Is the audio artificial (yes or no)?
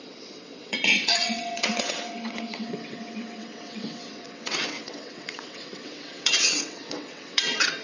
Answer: yes